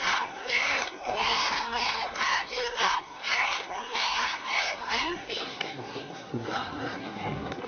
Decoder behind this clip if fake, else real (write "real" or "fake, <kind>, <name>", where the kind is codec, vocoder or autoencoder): fake, codec, SNAC